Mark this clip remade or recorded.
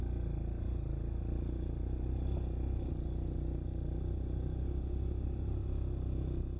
recorded